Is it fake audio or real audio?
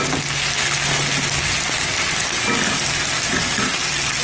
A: real